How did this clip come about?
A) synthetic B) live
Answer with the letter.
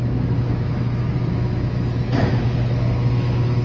A